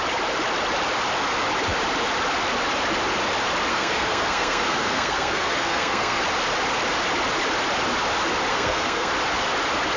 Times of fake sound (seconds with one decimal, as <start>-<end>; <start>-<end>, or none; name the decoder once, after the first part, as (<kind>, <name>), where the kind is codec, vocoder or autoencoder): 3.7-6.2 (codec, SNAC); 8.5-9.1